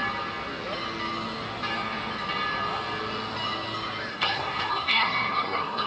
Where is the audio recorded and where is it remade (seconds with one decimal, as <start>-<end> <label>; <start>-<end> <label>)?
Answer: 0.0-4.1 recorded; 4.1-5.9 remade